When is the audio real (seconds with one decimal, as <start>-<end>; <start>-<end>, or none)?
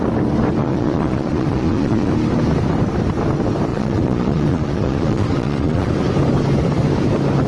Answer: 0.0-0.6; 2.1-3.7; 5.9-7.5